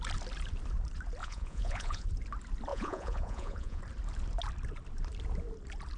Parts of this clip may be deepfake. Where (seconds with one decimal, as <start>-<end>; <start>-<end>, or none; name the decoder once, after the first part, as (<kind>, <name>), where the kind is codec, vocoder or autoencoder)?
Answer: 1.2-2.1 (vocoder, Vocos); 2.7-3.8